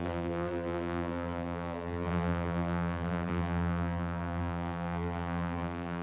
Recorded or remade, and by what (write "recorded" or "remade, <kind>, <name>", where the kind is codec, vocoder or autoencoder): remade, vocoder, BigVGAN v2